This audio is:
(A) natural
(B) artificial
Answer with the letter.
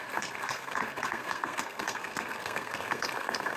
B